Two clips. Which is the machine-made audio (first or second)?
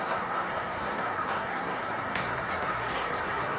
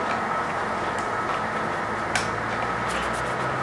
first